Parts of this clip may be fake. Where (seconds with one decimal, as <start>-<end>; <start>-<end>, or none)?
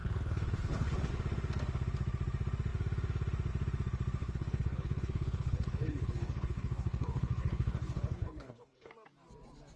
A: 0.0-1.1; 4.2-8.9